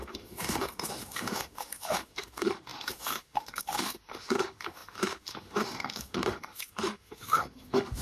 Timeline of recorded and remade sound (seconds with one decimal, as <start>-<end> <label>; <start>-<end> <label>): 0.0-8.0 remade